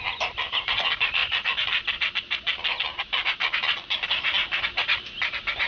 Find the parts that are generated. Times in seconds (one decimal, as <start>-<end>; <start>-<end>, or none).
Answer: none